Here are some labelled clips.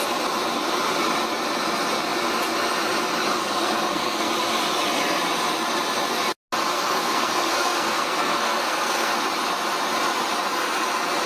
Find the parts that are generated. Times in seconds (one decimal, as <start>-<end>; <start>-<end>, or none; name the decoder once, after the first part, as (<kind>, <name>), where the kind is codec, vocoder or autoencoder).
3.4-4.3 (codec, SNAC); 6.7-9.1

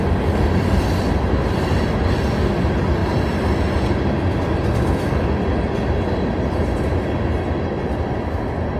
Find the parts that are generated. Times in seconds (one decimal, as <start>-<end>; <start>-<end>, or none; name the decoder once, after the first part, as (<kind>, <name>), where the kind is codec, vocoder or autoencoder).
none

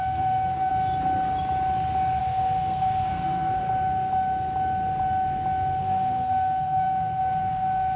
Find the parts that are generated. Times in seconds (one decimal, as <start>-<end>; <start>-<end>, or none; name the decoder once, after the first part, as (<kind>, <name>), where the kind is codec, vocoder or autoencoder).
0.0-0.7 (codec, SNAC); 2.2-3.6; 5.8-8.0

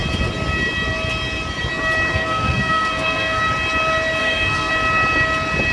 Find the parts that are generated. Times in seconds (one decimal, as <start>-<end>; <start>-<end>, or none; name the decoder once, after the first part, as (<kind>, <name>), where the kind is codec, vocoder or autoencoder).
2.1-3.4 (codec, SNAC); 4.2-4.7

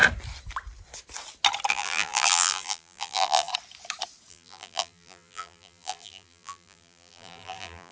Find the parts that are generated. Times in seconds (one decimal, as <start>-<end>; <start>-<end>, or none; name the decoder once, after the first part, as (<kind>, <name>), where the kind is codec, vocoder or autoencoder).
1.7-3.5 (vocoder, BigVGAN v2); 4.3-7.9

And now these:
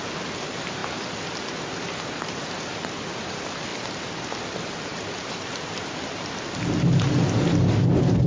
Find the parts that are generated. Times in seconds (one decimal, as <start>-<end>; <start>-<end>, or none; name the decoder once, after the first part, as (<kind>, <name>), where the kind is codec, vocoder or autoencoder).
none

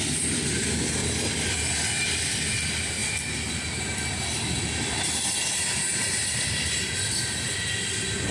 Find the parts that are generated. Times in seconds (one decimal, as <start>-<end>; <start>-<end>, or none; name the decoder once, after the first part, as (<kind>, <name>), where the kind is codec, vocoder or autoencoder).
none